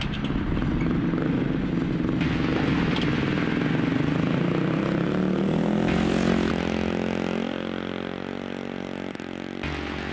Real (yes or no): yes